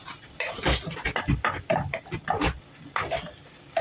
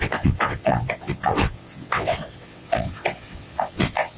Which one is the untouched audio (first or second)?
first